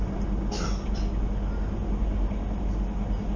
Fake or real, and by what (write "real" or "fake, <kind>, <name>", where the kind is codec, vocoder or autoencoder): real